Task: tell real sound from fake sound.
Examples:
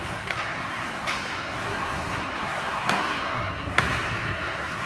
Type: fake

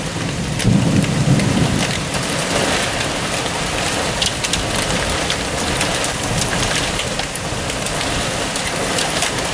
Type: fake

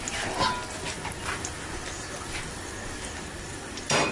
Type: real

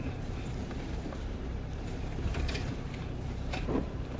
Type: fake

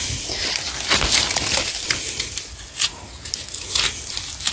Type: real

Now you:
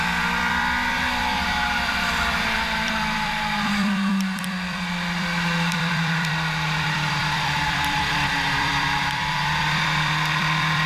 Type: fake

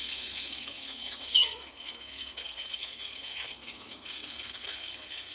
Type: fake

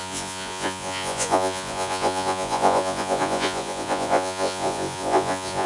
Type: fake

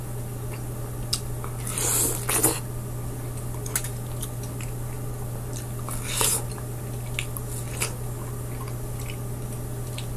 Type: real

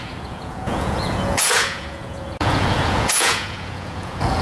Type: fake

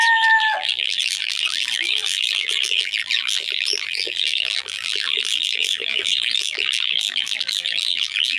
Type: fake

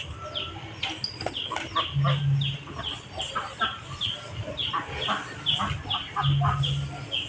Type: real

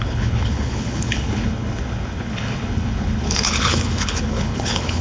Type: fake